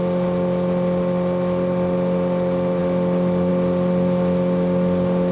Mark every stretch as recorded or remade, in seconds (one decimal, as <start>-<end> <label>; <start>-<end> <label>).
0.0-5.3 recorded